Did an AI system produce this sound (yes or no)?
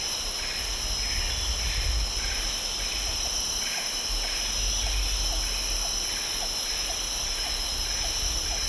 no